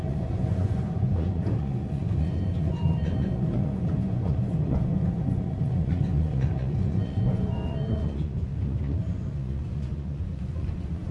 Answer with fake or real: fake